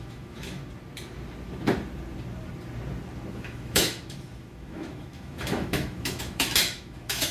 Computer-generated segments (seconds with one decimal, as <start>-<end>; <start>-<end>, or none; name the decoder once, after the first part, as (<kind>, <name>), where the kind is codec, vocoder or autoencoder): 0.0-0.6 (autoencoder, DAC-VAE); 3.3-7.3